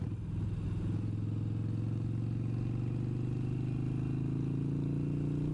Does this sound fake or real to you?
real